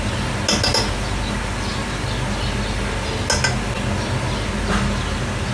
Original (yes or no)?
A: yes